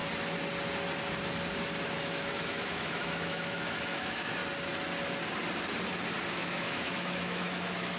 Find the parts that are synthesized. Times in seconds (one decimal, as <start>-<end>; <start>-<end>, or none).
2.0-4.4; 6.3-8.0